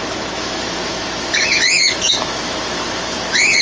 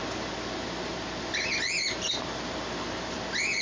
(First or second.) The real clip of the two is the second